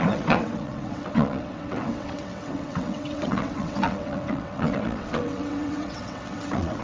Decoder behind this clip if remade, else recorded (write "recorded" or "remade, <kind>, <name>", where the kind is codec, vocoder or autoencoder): remade, vocoder, WaveNeXt